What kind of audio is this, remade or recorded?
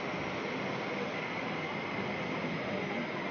recorded